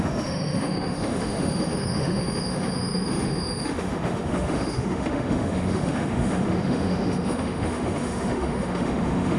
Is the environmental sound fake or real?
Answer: fake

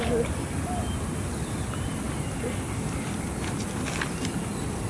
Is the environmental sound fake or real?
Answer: real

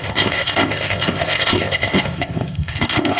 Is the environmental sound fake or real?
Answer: fake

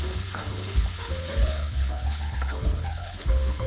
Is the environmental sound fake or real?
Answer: fake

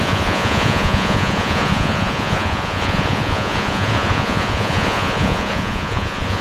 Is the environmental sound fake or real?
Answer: fake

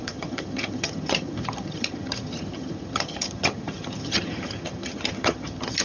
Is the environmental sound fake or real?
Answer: fake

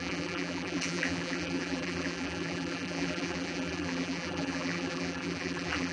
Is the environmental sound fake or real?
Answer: fake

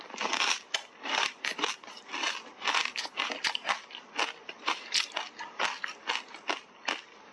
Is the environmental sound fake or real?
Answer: fake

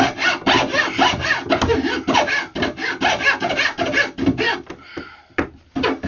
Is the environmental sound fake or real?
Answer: real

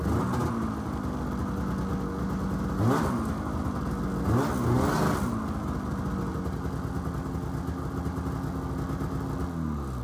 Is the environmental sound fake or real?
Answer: real